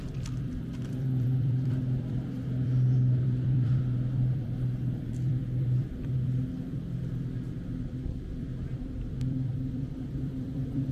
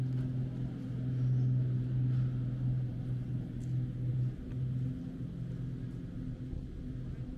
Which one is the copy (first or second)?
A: first